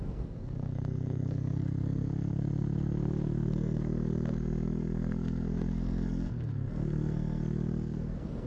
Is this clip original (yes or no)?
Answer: no